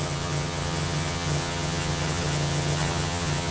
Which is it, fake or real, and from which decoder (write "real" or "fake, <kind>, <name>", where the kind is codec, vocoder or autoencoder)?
fake, vocoder, HiFi-GAN